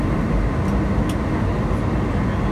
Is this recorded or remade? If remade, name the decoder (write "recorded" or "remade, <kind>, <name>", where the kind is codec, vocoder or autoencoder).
recorded